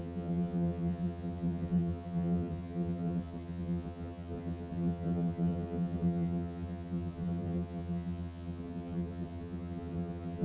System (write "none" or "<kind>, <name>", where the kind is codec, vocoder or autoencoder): vocoder, HiFi-GAN